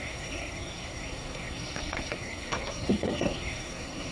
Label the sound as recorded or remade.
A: remade